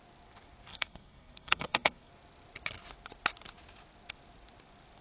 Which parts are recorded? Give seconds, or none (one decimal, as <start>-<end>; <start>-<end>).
0.0-0.7; 2.1-5.0